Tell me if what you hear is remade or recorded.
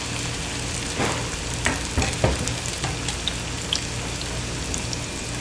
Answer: recorded